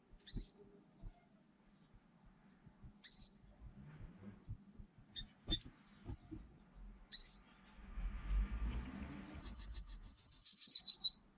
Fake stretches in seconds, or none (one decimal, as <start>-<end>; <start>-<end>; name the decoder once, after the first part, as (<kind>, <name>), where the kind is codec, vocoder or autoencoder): 9.4-10.8 (autoencoder, DAC-VAE)